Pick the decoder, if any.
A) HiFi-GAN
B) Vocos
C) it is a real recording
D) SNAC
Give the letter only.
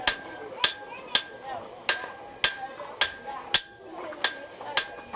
C